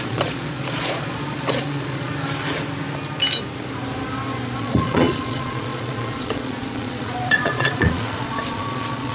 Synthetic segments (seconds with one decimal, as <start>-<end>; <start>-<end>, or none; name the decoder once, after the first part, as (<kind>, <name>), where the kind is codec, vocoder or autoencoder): 0.0-2.1 (vocoder, Vocos); 4.6-9.1